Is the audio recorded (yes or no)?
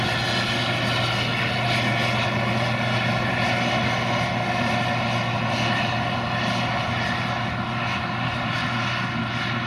yes